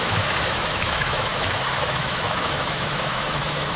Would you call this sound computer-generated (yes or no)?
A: yes